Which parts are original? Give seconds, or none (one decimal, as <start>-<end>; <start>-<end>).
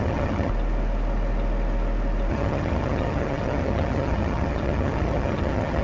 0.5-2.3